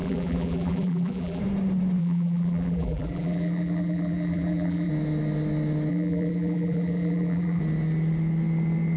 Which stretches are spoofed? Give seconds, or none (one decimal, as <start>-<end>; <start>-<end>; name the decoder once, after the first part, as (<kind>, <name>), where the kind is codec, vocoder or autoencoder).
0.0-1.4 (vocoder, BigVGAN v2); 2.0-4.9; 5.9-7.6